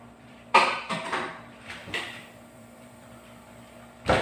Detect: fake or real fake